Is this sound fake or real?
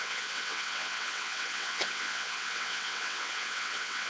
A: fake